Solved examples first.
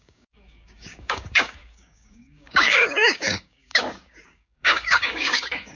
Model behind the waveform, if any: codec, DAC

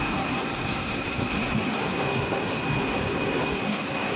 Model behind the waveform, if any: codec, SNAC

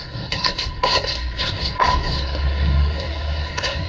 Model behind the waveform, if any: codec, SNAC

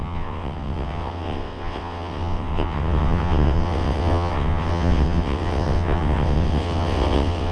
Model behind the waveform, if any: vocoder, WaveNeXt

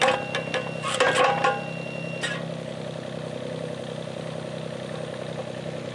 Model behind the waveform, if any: none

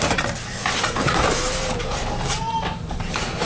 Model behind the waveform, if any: vocoder, BigVGAN v2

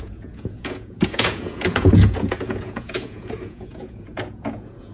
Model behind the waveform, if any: vocoder, Vocos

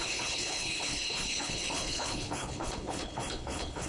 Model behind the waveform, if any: codec, HILCodec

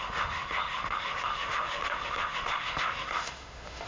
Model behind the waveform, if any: autoencoder, DAC-VAE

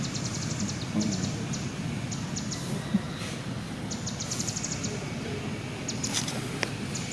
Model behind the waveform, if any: none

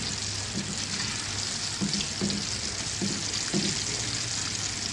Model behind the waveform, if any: none